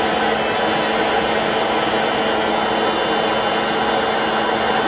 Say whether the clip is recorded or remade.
recorded